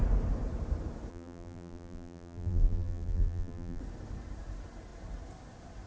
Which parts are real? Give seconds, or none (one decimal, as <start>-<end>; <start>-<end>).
0.0-1.1; 3.8-5.9